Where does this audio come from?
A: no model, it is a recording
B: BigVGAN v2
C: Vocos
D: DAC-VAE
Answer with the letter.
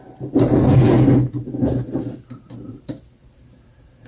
B